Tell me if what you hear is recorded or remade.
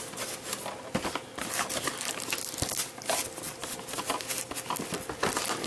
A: recorded